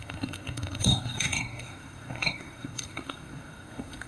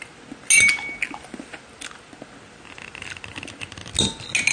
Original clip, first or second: second